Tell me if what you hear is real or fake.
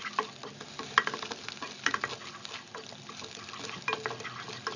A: real